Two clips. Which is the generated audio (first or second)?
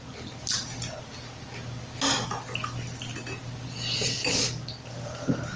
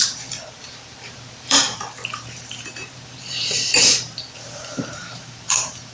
second